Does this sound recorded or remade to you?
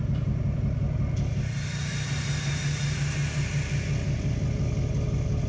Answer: recorded